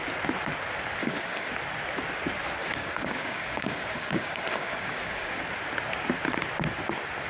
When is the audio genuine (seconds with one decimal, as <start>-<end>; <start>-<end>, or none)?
0.0-1.0; 1.5-2.6; 5.4-7.3